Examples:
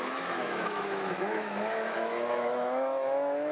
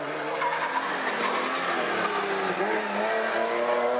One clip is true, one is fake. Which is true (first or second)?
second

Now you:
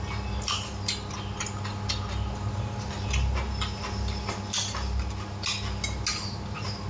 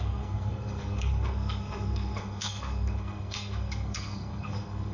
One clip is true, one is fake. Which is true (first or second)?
first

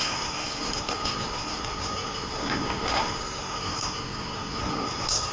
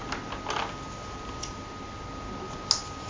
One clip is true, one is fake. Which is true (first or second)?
second